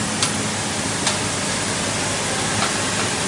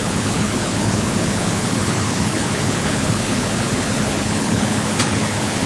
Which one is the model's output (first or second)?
second